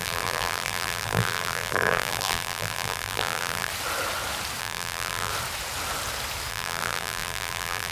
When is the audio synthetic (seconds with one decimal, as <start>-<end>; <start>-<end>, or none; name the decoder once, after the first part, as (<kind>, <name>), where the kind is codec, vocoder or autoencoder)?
0.0-3.7 (vocoder, BigVGAN v2); 4.6-5.3; 6.5-7.9